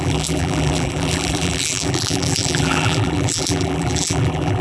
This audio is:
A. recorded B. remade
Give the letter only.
B